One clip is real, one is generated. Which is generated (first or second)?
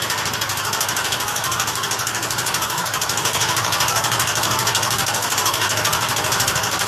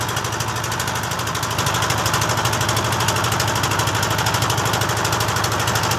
first